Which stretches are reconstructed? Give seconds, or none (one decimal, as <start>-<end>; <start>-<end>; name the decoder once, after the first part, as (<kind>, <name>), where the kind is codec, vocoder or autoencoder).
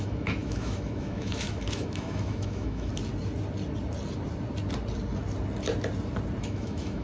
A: 0.0-2.9 (autoencoder, DAC-VAE); 6.4-7.0